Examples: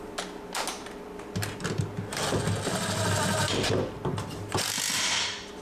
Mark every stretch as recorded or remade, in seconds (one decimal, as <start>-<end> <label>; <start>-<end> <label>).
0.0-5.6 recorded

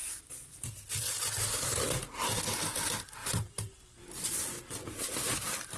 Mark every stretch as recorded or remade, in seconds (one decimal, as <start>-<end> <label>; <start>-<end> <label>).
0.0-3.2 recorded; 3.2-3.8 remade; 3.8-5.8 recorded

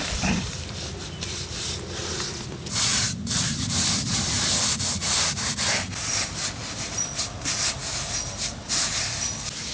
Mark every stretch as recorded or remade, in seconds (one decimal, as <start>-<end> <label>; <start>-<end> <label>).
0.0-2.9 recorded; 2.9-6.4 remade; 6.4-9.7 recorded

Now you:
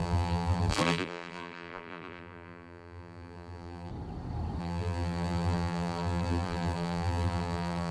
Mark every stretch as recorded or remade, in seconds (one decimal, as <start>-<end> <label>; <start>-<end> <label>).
0.0-3.9 remade; 3.9-4.6 recorded; 4.6-7.9 remade

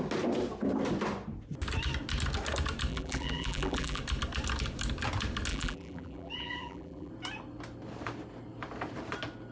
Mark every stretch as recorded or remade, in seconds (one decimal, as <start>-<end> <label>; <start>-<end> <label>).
0.0-2.9 recorded; 2.9-4.0 remade; 4.0-5.5 recorded; 5.5-7.1 remade; 7.1-9.5 recorded